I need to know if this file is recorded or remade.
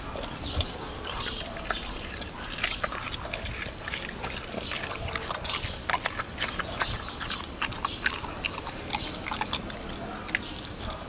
recorded